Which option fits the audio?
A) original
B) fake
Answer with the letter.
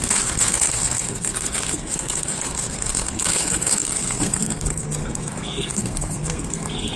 B